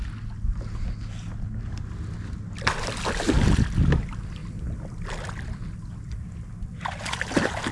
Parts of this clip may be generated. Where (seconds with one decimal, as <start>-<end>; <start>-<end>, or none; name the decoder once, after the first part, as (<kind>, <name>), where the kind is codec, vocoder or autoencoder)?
4.4-5.7 (vocoder, BigVGAN v2)